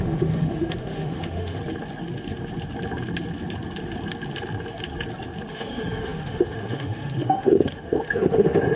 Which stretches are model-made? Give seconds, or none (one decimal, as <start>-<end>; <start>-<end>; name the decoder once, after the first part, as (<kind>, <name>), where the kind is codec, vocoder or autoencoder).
0.0-1.6 (autoencoder, DAC-VAE); 5.5-8.8

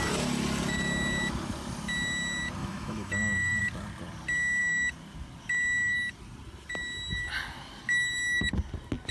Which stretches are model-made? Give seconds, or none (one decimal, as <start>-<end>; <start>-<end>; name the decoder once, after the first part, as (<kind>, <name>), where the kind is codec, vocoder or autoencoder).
2.6-3.6 (autoencoder, DAC-VAE)